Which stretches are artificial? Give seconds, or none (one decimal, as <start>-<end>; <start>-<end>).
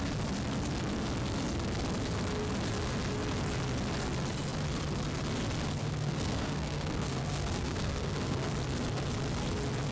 5.8-8.5